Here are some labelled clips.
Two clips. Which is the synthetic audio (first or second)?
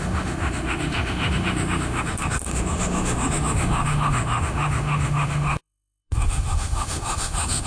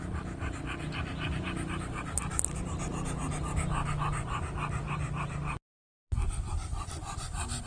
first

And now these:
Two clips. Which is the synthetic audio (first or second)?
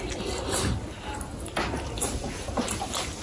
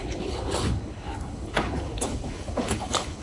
second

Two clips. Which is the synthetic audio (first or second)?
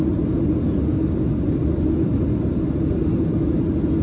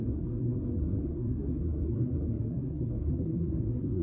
second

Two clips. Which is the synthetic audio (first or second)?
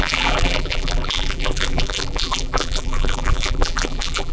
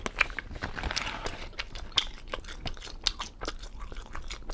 first